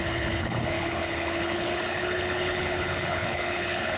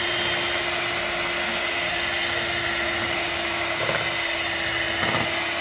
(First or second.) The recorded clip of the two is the second